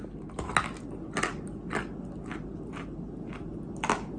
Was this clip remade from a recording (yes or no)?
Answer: no